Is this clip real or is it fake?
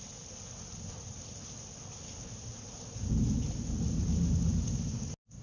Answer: real